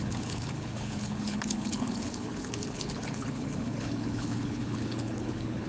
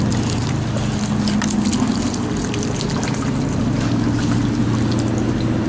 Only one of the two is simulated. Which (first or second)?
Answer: first